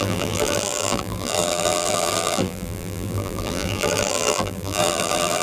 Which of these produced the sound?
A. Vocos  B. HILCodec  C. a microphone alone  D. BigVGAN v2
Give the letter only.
D